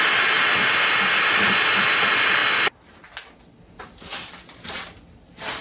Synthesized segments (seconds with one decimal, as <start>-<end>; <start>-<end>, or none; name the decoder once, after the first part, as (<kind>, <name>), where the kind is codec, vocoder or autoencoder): none